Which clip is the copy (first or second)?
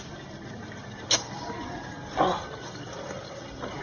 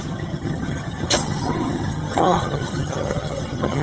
second